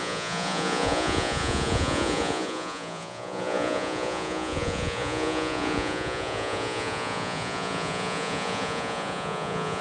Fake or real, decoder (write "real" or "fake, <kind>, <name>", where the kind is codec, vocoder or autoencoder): fake, vocoder, Vocos